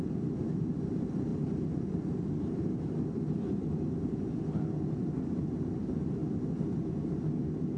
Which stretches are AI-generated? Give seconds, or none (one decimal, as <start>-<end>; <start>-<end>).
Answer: 1.3-5.7

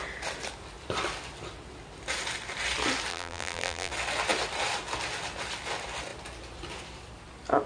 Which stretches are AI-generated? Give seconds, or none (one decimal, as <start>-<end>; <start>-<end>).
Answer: 3.1-3.9

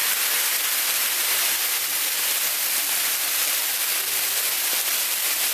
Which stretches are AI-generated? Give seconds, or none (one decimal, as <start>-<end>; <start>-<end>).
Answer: 0.0-0.8; 1.9-2.8

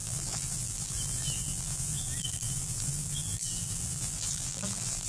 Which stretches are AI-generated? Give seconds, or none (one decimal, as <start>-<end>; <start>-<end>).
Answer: 0.0-5.1